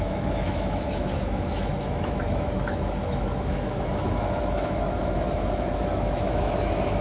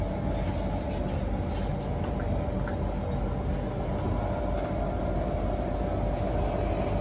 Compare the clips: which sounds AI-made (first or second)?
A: first